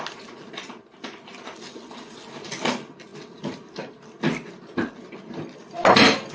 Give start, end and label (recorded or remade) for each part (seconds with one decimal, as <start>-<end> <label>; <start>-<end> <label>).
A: 0.0-6.3 recorded